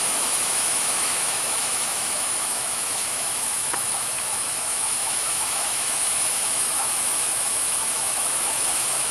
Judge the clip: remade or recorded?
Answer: remade